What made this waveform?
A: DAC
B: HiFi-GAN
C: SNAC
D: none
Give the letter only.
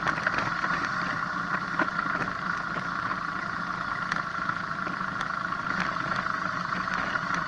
D